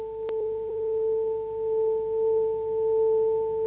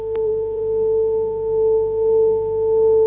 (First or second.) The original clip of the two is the first